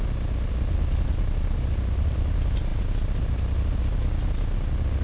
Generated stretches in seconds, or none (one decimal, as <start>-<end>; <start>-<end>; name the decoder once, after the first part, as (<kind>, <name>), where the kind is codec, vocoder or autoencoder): none